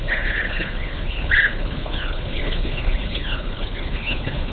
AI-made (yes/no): yes